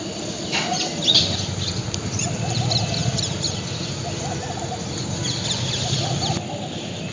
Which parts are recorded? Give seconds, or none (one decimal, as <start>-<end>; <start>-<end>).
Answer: 0.0-7.1